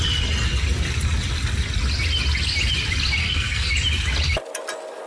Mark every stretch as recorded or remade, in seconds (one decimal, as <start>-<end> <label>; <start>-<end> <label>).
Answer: 0.0-3.2 recorded; 3.2-3.7 remade; 3.7-5.1 recorded